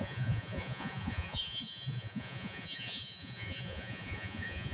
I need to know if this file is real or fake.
fake